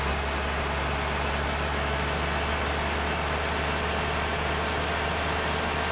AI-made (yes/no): no